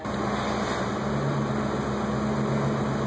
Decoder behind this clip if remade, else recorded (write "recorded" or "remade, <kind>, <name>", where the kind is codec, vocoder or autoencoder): recorded